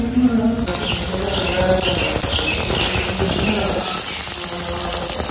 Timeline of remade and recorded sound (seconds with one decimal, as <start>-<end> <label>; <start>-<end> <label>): 0.0-5.3 recorded